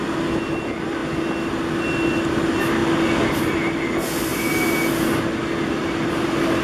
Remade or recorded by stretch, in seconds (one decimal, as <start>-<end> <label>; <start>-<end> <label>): 0.0-6.6 recorded